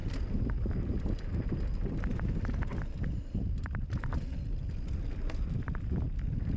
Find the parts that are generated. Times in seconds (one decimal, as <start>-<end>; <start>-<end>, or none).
0.0-1.4; 4.6-6.6